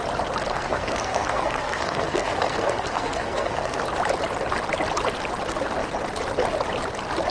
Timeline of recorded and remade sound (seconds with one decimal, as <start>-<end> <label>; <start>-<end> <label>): 0.0-0.5 recorded; 0.5-3.8 remade; 3.8-7.3 recorded